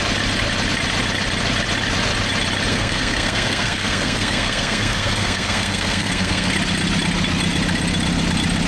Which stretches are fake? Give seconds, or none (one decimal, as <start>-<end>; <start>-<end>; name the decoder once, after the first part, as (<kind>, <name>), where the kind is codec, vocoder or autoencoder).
2.7-6.5 (codec, SNAC)